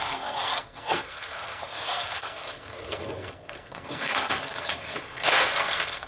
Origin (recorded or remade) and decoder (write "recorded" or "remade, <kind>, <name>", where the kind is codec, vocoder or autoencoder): remade, codec, SNAC